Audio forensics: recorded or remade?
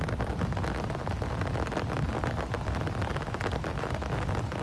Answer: recorded